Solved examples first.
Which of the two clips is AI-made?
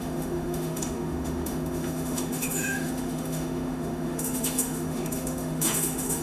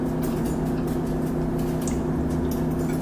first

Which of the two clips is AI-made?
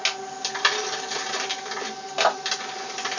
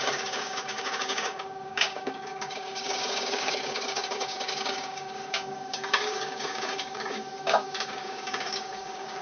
second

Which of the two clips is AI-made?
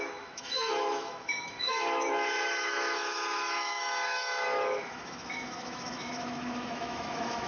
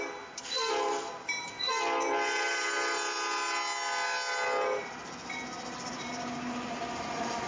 first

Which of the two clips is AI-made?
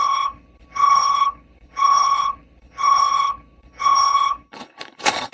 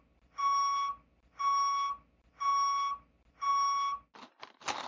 first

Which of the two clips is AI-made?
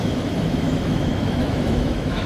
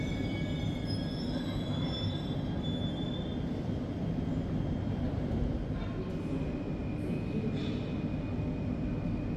first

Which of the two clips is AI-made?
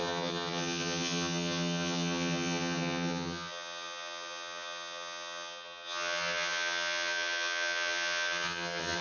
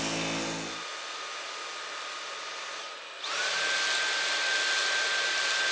first